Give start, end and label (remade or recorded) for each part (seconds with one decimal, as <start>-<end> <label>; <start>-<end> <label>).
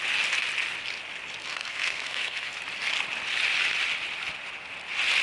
0.0-1.4 recorded; 1.4-2.6 remade; 2.6-5.2 recorded